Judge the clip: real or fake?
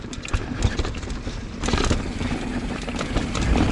real